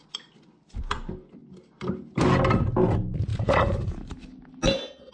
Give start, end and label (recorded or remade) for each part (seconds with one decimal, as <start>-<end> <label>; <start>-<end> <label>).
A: 0.0-5.1 recorded